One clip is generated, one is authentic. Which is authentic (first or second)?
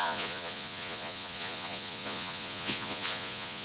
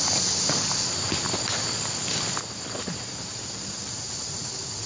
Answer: second